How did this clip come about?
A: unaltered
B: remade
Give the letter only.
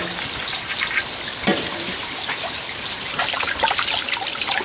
A